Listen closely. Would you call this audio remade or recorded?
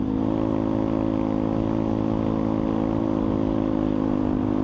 recorded